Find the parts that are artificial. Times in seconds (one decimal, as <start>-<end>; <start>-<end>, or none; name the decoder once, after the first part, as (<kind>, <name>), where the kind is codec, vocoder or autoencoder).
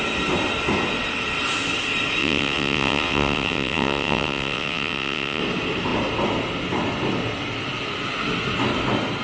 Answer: 2.2-5.4 (vocoder, WaveNeXt)